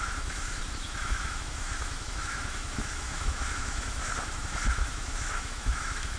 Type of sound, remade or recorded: remade